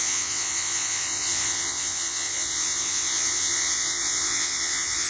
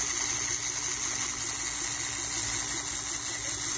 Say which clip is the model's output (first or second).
first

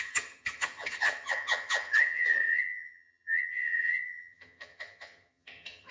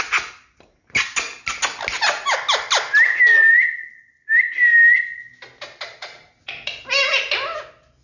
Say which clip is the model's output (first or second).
first